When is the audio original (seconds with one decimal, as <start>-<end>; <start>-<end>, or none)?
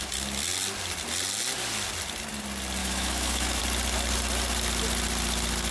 0.0-2.8; 3.6-5.7